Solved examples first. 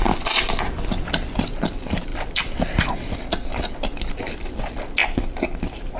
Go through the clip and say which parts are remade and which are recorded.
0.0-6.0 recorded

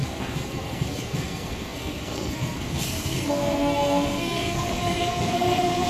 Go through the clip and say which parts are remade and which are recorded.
0.0-5.9 remade

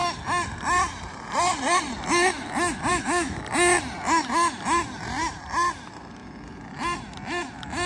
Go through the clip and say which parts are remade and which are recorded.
0.0-2.9 recorded; 2.9-3.4 remade; 3.4-7.9 recorded

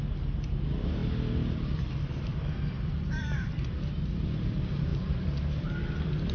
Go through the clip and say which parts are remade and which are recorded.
0.0-1.0 recorded; 1.0-3.5 remade; 3.5-4.9 recorded; 4.9-5.8 remade; 5.8-6.3 recorded

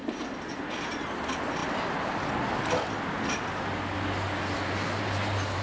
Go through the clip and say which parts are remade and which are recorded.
0.0-5.6 recorded